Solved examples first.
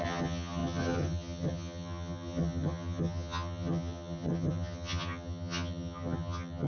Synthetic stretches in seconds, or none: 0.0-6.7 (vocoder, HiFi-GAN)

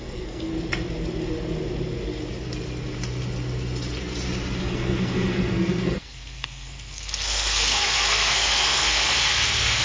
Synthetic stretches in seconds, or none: 0.0-0.5 (codec, SNAC); 4.6-9.8

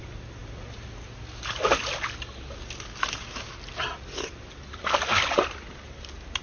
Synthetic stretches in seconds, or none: none